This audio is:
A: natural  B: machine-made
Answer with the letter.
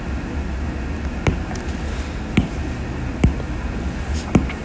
A